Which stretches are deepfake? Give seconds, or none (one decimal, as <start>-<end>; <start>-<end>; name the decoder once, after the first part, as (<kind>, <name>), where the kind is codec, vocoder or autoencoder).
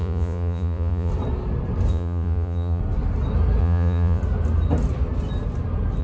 0.0-1.1 (vocoder, Vocos); 1.9-2.8; 3.6-4.2